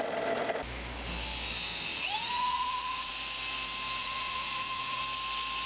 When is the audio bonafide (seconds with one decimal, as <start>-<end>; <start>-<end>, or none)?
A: 0.0-1.9; 3.1-4.0; 5.0-5.7